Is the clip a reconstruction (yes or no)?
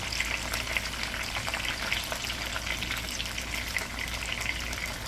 no